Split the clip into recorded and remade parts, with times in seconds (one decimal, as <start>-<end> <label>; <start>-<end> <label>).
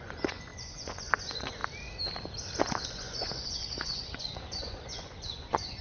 0.0-1.6 remade; 1.6-2.6 recorded; 2.6-5.8 remade